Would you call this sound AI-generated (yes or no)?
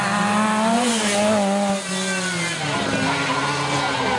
no